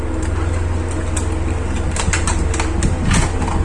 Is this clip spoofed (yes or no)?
no